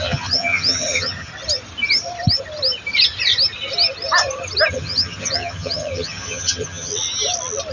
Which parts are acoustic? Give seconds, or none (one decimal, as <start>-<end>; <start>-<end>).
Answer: 1.3-4.7; 6.9-7.7